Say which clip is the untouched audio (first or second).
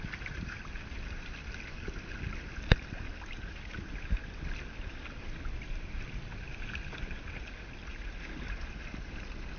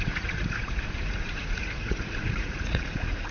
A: first